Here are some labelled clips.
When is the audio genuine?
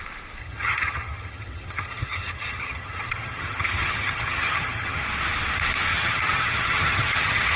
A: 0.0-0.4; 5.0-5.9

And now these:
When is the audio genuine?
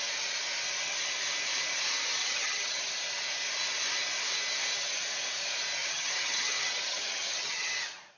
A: 0.0-2.2; 2.9-5.8; 7.7-8.2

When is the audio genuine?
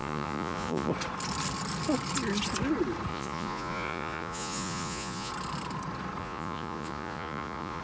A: 0.9-3.1; 5.3-6.2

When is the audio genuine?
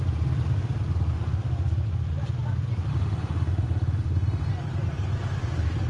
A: 0.0-2.9; 4.5-5.9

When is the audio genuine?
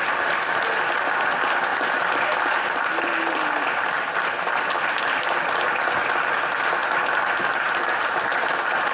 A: 0.0-8.9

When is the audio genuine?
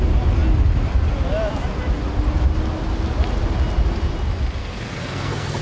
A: 0.0-4.6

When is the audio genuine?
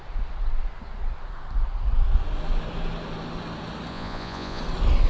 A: 0.0-3.9; 4.6-5.1